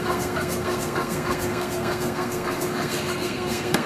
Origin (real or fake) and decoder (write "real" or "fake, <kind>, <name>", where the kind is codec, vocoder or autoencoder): fake, codec, SNAC